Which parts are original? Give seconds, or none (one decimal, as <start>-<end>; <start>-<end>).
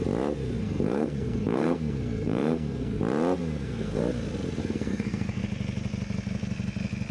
0.0-0.6; 3.0-3.4; 4.0-4.6; 5.4-7.1